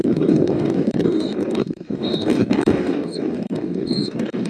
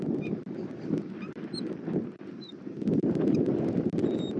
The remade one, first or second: first